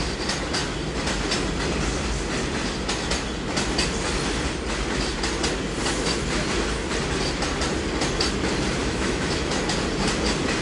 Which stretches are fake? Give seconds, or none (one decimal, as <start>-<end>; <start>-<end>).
8.8-9.6